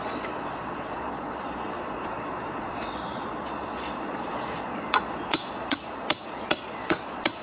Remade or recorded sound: remade